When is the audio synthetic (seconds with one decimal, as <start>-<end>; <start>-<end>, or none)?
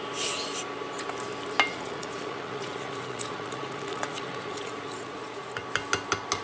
1.7-5.5